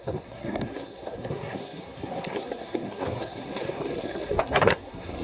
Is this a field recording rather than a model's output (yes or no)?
no